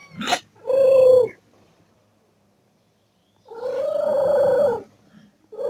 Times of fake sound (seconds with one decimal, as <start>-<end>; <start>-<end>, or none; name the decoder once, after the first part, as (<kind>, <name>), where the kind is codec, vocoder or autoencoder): none